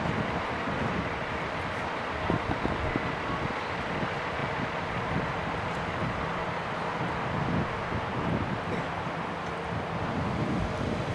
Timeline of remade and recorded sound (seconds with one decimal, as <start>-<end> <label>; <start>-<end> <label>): 0.0-11.1 recorded